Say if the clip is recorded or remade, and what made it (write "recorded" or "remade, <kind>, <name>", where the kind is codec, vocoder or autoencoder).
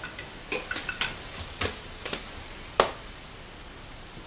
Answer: recorded